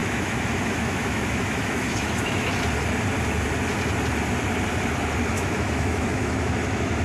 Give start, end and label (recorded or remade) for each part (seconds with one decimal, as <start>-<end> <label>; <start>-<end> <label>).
0.0-2.5 remade; 2.5-5.3 recorded; 5.3-7.0 remade